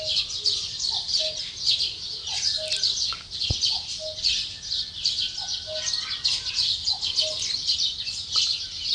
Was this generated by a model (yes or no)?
no